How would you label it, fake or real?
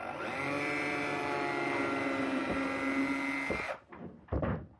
real